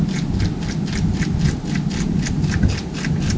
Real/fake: real